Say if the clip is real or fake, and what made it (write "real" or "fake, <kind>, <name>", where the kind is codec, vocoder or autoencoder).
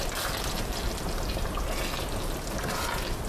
real